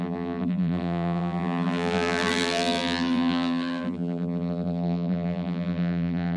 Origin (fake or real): fake